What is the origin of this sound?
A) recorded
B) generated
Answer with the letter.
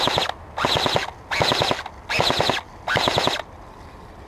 A